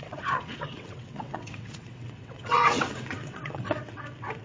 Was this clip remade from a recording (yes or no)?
yes